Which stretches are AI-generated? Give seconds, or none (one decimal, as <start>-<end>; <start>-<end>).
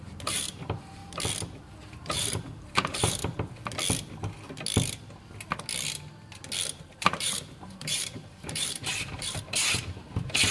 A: 0.0-1.0; 1.6-3.2; 6.8-10.5